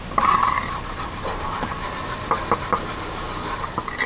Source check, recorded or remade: remade